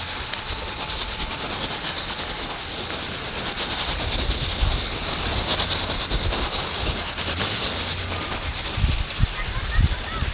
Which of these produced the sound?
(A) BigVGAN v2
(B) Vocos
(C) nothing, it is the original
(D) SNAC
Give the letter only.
C